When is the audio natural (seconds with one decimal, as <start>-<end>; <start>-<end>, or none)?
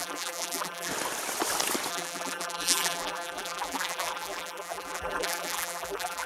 0.9-1.9